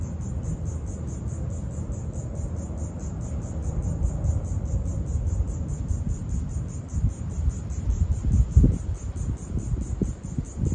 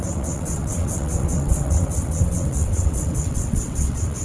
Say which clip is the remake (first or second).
second